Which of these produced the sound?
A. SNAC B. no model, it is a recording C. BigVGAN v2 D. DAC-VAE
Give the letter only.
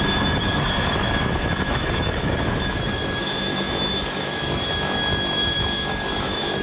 D